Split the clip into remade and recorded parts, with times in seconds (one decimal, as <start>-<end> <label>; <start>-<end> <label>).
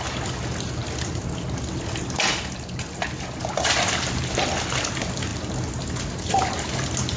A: 0.0-7.2 recorded